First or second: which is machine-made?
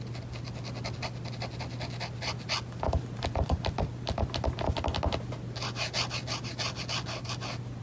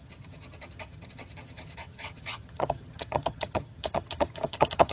second